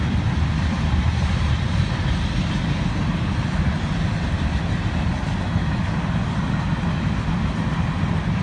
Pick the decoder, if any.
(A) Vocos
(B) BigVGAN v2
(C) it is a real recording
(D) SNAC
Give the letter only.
C